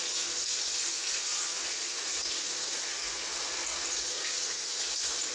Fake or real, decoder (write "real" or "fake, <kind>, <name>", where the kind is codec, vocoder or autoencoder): real